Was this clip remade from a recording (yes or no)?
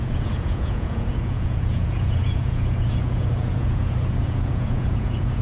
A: yes